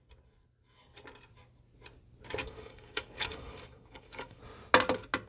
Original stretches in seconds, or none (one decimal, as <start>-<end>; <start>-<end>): 0.0-2.4; 4.4-5.3